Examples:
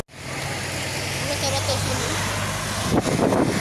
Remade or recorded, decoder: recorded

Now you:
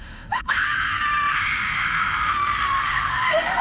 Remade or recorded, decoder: remade, autoencoder, DAC-VAE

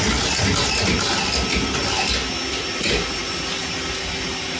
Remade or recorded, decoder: recorded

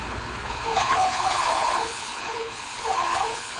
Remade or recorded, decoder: remade, codec, HILCodec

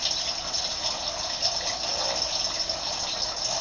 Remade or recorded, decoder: recorded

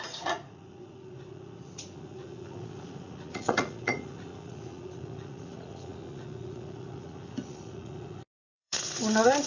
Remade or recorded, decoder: remade, vocoder, Vocos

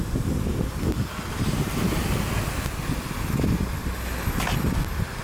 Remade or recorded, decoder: recorded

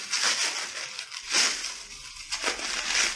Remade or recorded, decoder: recorded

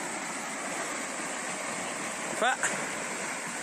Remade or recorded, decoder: recorded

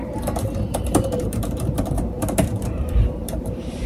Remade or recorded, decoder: remade, vocoder, BigVGAN v2